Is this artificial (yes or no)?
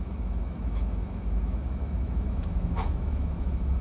yes